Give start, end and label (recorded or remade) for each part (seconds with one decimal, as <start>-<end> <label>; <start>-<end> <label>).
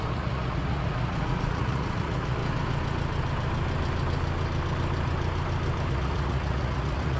0.0-2.4 remade; 2.4-5.9 recorded; 5.9-7.2 remade